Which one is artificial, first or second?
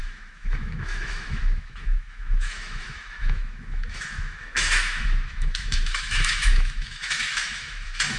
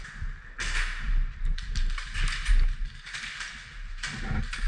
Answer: first